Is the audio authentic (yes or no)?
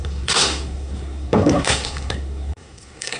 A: no